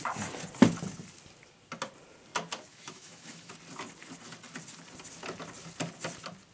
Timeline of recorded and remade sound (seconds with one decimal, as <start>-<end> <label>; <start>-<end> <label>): 0.0-2.7 recorded; 2.7-3.5 remade; 3.5-6.5 recorded